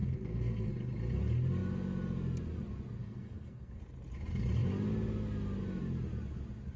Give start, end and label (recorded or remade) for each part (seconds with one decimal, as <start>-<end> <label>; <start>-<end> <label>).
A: 0.0-0.7 remade; 0.7-3.0 recorded; 3.0-3.8 remade; 3.8-6.8 recorded